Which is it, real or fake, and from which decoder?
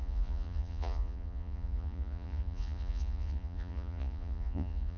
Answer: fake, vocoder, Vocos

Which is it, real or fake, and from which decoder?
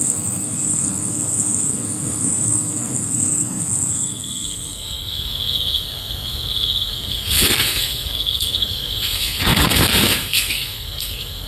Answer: fake, codec, SNAC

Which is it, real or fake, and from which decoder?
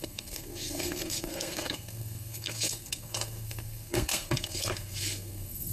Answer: fake, codec, SNAC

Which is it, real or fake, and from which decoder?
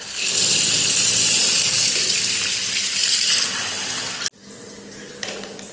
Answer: real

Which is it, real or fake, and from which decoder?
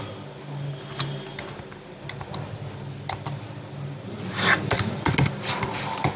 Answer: real